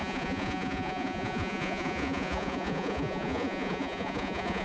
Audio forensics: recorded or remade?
remade